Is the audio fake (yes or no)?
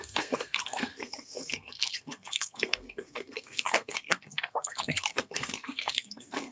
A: yes